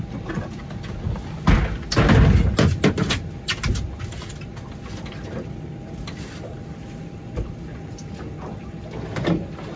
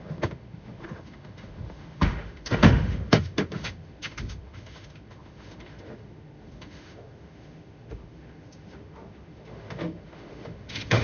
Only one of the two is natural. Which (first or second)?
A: first